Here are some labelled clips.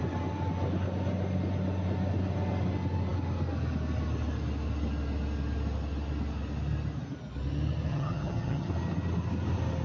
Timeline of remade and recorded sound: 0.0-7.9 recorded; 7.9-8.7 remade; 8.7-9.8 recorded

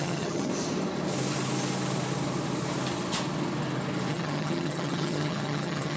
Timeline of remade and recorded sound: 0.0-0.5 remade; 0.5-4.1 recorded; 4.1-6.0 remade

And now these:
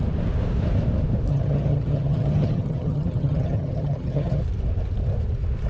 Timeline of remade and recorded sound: 0.0-1.3 recorded; 1.3-4.4 remade; 4.4-5.7 recorded

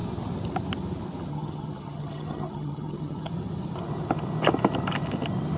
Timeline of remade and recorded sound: 0.0-1.3 recorded; 1.3-3.3 remade; 3.3-5.6 recorded

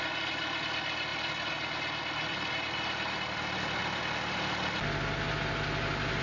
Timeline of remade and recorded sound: 0.0-6.2 recorded

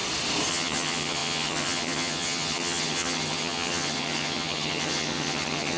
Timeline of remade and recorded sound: 0.0-0.5 recorded; 0.5-5.8 remade

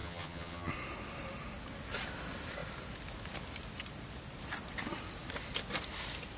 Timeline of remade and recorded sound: 0.0-0.7 remade; 0.7-6.4 recorded